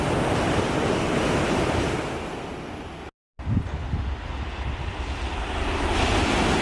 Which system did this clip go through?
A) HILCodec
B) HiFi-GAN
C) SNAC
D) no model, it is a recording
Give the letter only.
D